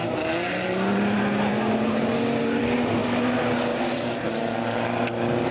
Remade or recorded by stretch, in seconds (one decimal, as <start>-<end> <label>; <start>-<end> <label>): 0.0-0.5 recorded; 0.5-5.5 remade

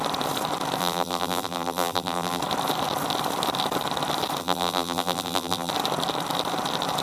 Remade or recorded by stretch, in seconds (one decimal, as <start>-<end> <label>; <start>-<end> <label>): 0.0-0.8 recorded; 0.8-2.4 remade; 2.4-4.4 recorded; 4.4-5.7 remade; 5.7-7.0 recorded

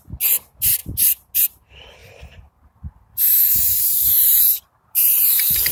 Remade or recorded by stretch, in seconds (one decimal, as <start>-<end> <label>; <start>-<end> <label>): 0.0-2.0 recorded; 2.0-5.7 remade

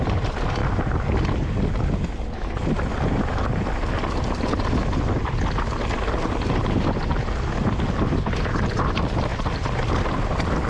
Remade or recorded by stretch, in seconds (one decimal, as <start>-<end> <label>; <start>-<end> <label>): 0.0-10.7 recorded